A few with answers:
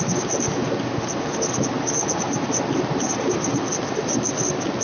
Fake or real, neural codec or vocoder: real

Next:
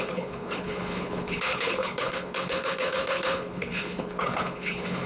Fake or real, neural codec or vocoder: fake, codec, HILCodec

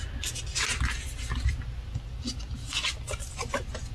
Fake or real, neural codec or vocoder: real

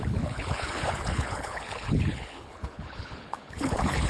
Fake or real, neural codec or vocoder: fake, codec, HILCodec